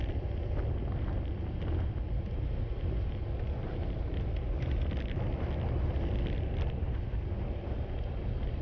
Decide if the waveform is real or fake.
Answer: real